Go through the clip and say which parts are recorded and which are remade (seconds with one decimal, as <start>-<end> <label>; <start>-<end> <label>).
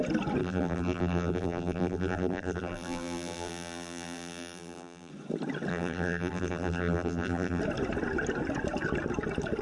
0.0-0.4 recorded; 0.4-5.1 remade; 5.1-5.7 recorded; 5.7-7.6 remade; 7.6-9.6 recorded